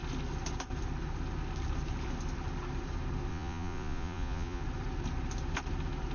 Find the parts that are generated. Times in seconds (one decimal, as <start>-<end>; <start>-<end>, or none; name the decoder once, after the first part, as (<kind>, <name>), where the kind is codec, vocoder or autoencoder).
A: 3.3-4.6 (vocoder, Vocos)